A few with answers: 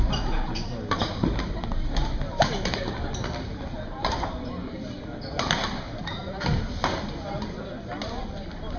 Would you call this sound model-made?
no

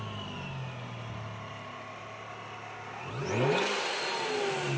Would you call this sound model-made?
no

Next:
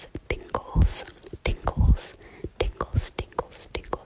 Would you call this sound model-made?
no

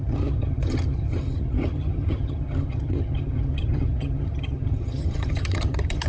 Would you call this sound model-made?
yes